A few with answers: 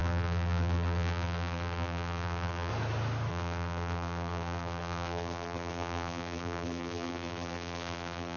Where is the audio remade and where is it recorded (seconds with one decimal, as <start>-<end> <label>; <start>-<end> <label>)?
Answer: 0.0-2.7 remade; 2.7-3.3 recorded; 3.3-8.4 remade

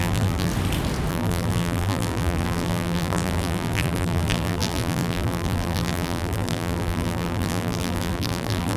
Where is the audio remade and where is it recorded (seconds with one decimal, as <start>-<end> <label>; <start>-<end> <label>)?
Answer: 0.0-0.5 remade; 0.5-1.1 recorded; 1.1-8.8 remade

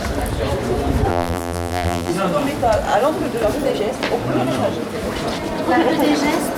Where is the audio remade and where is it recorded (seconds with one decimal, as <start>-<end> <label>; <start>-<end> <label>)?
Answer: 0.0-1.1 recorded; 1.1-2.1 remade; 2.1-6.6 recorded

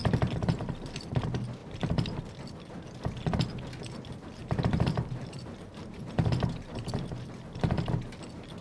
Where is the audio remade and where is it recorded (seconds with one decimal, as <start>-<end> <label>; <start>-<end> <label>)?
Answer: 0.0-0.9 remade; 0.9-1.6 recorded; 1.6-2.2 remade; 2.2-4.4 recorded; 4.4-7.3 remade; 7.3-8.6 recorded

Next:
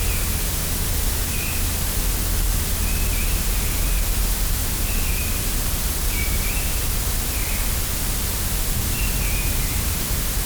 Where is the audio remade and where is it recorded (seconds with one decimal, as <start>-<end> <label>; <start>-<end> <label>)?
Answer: 0.0-4.6 recorded; 4.6-5.2 remade; 5.2-10.5 recorded